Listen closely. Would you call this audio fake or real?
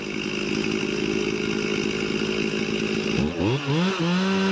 real